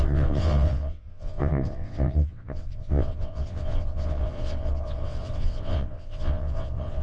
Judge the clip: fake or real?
fake